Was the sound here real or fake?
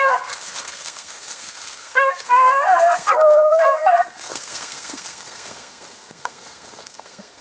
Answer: fake